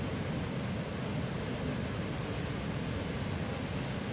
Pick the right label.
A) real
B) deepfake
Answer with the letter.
A